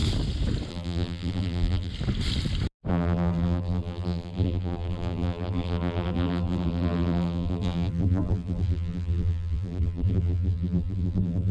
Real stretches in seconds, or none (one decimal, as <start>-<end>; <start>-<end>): 0.0-0.7; 1.9-2.9